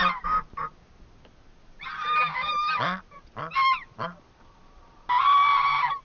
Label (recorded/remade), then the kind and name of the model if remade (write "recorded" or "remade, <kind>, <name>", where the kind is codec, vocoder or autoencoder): recorded